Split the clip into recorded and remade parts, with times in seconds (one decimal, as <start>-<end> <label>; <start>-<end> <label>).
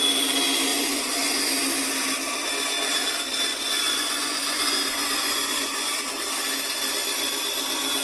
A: 0.0-0.7 recorded; 0.7-1.5 remade; 1.5-3.5 recorded; 3.5-6.0 remade; 6.0-8.0 recorded